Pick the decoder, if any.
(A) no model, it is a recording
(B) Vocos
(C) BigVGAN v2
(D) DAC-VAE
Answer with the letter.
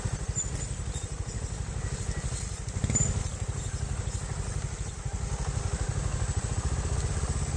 A